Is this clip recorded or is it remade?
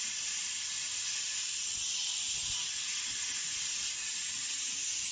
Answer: recorded